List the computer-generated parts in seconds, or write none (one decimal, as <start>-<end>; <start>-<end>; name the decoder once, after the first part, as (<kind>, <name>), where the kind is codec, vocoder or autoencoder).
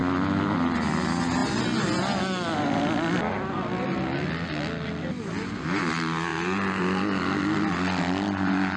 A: none